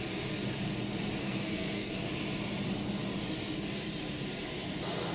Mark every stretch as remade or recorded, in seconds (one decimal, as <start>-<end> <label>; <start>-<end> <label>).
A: 0.0-1.2 recorded; 1.2-1.9 remade; 1.9-5.1 recorded